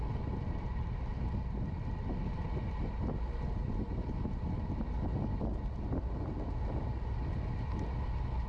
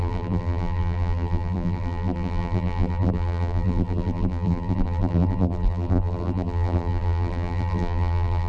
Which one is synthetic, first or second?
second